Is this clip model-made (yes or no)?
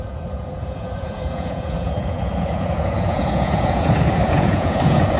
yes